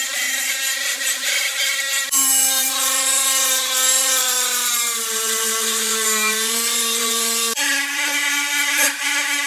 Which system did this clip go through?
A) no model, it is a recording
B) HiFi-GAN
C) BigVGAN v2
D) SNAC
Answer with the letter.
C